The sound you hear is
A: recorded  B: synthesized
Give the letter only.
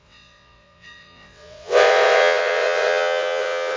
B